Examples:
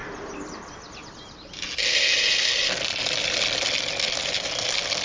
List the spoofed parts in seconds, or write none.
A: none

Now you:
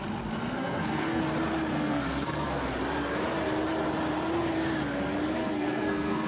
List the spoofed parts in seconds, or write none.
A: 0.6-1.2 (codec, SNAC); 1.7-2.6; 5.4-6.3